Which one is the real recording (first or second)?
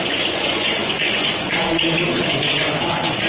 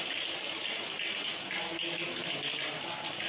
second